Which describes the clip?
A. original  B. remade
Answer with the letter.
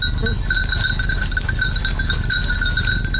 A